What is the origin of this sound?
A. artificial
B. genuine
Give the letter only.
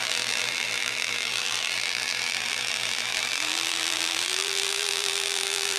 A